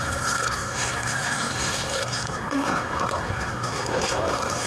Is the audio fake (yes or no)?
yes